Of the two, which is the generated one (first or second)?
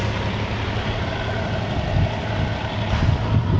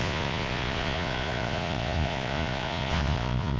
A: second